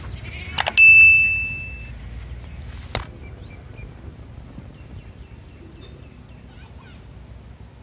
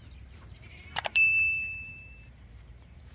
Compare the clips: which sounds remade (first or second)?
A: second